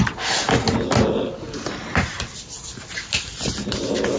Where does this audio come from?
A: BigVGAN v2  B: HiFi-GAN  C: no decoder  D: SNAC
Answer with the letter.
C